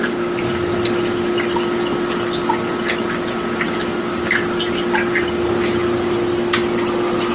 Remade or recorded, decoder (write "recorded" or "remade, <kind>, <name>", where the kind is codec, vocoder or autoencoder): recorded